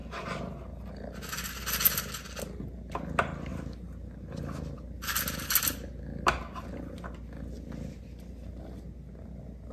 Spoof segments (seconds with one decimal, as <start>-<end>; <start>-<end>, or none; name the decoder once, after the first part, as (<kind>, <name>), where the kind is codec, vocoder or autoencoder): none